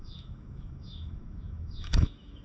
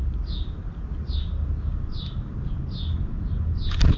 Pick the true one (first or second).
second